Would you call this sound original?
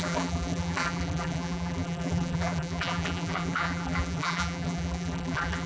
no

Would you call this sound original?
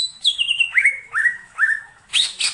no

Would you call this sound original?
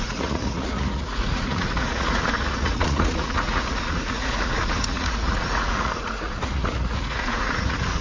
no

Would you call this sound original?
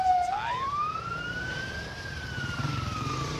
no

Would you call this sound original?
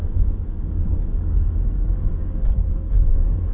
no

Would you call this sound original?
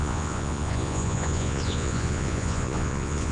no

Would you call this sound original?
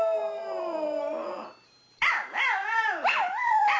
no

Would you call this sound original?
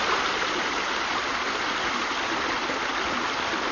yes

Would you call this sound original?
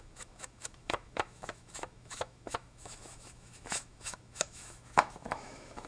no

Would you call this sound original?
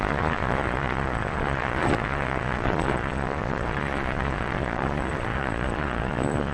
no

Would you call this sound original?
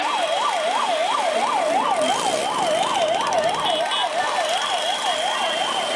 yes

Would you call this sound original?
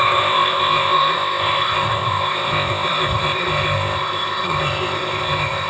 no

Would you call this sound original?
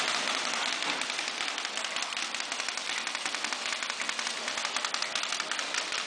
yes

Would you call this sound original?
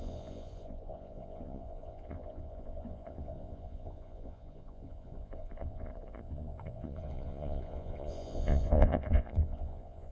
no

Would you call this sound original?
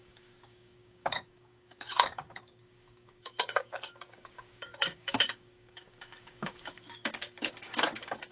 no